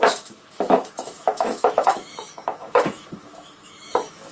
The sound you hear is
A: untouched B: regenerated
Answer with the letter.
B